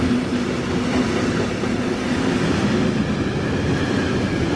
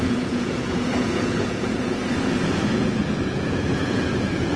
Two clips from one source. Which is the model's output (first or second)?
second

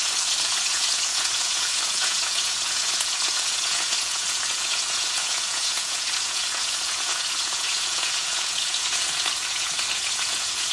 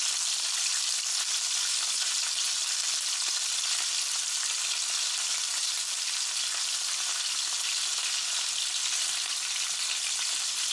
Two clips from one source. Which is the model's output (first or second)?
first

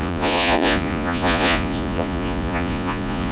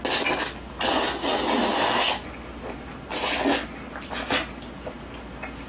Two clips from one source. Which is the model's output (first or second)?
first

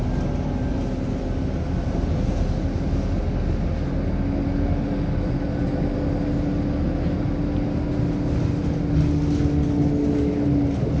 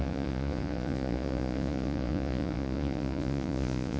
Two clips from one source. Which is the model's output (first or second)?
second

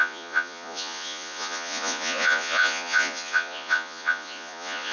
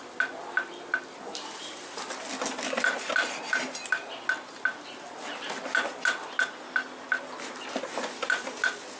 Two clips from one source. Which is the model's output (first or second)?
first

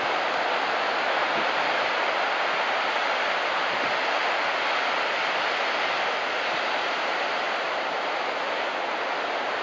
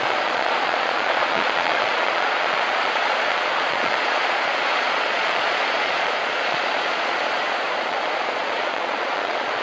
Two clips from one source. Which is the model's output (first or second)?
second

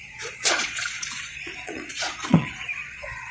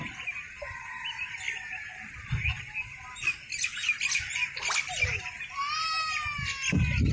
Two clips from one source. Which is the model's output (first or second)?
first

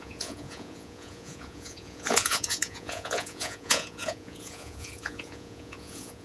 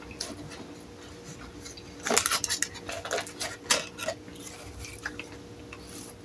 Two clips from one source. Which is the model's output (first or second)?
first